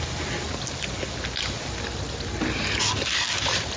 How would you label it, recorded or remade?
recorded